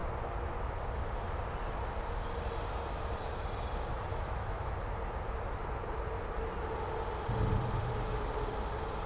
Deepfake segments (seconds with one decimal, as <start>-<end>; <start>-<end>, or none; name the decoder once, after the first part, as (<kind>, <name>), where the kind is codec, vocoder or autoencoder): 4.1-4.7 (autoencoder, DAC-VAE)